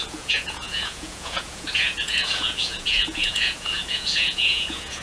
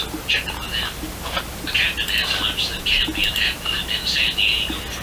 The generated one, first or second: first